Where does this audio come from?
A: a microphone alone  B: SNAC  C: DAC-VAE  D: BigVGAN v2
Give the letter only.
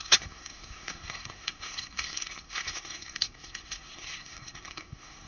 B